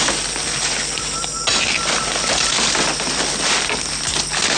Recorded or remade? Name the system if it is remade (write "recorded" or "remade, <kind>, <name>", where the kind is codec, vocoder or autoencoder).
recorded